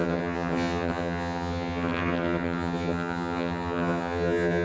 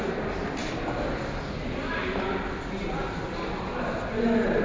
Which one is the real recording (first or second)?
second